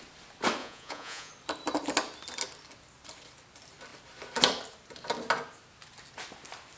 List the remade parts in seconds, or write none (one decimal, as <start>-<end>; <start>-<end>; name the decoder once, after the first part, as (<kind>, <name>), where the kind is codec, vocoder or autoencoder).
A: 0.6-1.3 (vocoder, Vocos)